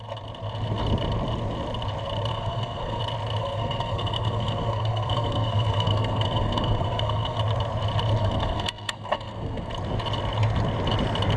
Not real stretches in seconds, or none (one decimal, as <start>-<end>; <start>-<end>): 2.3-3.0; 3.4-7.4; 8.2-9.7